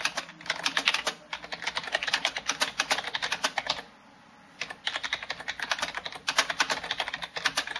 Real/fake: real